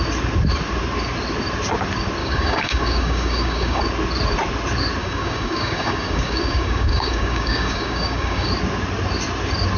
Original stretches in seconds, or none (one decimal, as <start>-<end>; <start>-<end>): 0.0-2.2; 3.8-5.0; 8.5-9.8

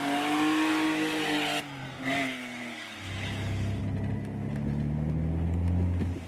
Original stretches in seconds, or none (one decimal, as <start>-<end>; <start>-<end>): 0.0-1.8; 3.8-6.3

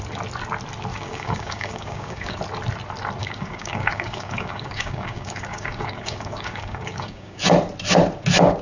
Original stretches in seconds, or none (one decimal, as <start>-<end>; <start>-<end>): 0.0-0.9; 2.4-3.2; 7.4-8.6